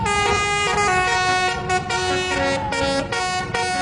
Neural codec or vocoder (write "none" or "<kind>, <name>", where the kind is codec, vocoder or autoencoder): none